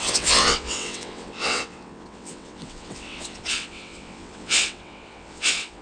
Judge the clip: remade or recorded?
remade